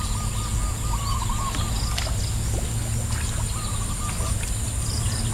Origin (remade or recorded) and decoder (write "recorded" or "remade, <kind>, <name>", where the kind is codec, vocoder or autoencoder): recorded